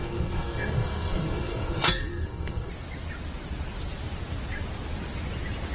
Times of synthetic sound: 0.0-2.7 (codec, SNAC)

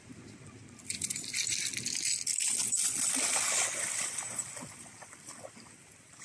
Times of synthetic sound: none

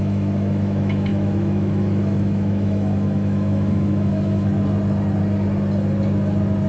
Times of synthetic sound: 0.0-4.5 (autoencoder, DAC-VAE)

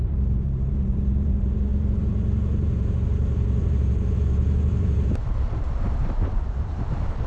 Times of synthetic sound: 0.0-7.3 (vocoder, BigVGAN v2)

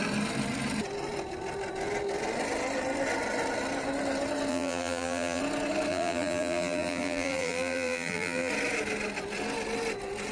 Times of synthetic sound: 4.5-5.4 (vocoder, BigVGAN v2); 5.9-8.5

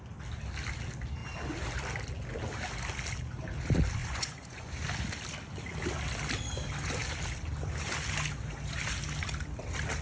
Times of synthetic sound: 4.0-4.7 (vocoder, Vocos)